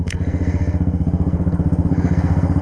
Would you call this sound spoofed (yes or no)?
yes